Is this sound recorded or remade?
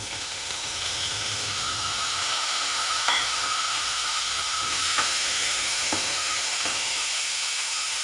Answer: remade